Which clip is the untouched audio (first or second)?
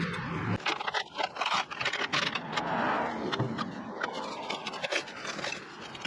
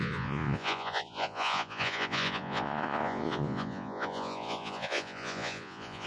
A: first